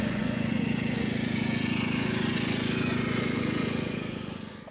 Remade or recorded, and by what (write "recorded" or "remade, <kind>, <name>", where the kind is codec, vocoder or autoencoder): remade, vocoder, Vocos